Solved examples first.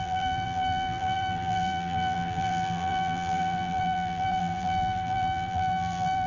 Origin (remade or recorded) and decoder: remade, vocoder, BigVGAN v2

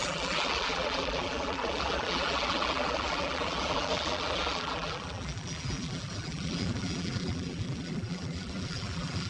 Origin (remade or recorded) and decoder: remade, vocoder, BigVGAN v2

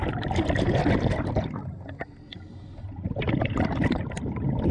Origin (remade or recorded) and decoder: recorded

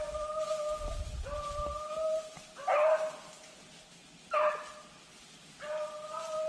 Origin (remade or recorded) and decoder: recorded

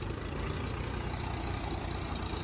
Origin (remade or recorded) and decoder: recorded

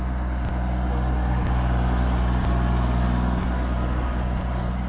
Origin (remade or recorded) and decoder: recorded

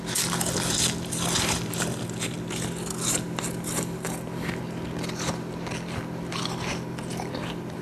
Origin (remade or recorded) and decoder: recorded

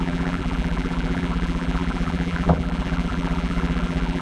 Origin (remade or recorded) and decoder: remade, vocoder, BigVGAN v2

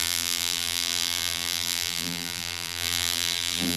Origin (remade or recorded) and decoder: remade, vocoder, BigVGAN v2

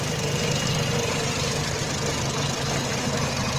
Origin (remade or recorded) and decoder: recorded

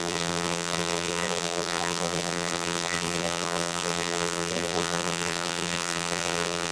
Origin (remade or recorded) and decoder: remade, vocoder, BigVGAN v2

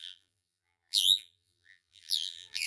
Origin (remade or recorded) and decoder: remade, vocoder, BigVGAN v2